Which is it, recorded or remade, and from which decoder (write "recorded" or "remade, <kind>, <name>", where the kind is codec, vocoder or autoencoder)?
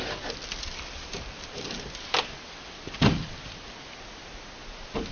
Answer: recorded